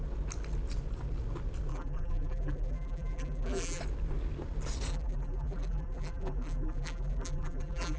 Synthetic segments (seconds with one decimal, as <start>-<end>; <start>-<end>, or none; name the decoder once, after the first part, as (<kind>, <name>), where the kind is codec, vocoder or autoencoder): 1.7-3.8 (vocoder, BigVGAN v2); 4.9-8.0